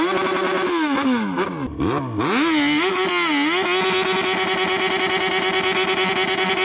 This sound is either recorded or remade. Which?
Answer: recorded